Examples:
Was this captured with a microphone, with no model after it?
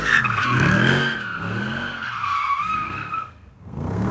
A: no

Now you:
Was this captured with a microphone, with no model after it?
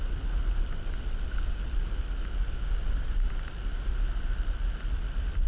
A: yes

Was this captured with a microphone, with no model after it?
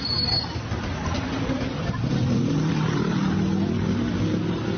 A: yes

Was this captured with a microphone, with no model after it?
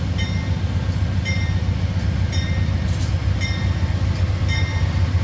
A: yes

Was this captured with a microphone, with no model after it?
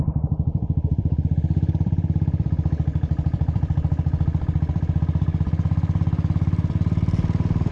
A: no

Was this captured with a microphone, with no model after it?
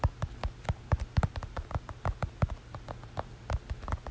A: yes